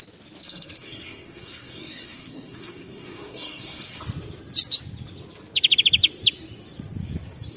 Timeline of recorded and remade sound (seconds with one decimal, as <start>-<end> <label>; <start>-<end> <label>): 0.0-0.4 recorded; 0.4-4.0 remade; 4.0-7.6 recorded